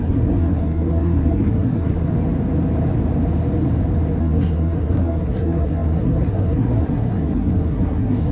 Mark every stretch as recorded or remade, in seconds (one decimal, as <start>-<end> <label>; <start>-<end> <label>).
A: 0.0-2.1 remade; 2.1-4.2 recorded; 4.2-8.3 remade